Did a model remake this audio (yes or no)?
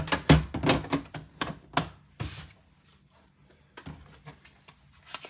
no